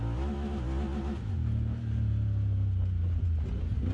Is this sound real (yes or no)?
yes